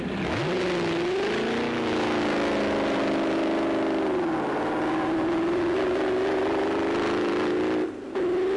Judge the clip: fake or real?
real